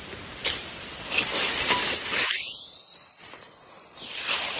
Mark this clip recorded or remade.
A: recorded